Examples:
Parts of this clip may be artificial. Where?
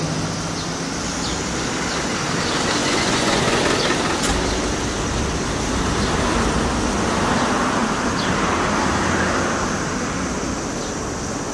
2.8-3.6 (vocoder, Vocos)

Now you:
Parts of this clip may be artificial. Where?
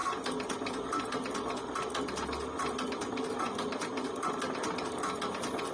none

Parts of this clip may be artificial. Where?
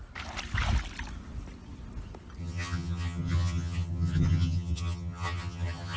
2.4-6.0 (vocoder, HiFi-GAN)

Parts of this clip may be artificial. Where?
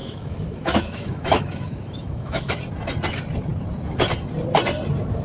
0.0-2.6 (autoencoder, DAC-VAE)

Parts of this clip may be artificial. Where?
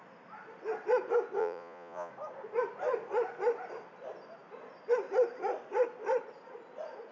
1.4-2.1 (vocoder, Vocos)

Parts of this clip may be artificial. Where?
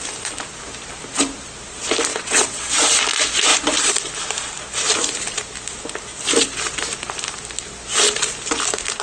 2.1-2.7 (vocoder, WaveNeXt)